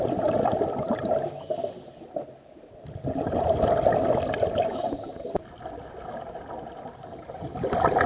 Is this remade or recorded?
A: recorded